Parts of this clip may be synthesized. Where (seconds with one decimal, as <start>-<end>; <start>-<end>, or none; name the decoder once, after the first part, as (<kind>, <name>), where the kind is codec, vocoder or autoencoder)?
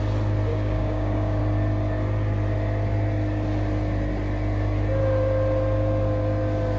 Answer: 0.5-1.4 (codec, DAC)